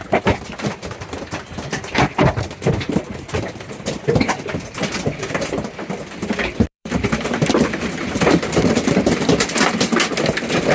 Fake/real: fake